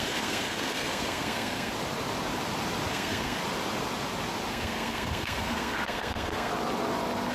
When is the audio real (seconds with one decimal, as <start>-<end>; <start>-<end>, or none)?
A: 1.7-2.9; 3.4-4.5; 6.5-7.3